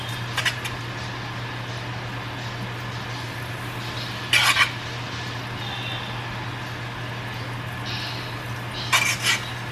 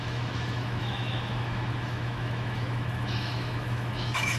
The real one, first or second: first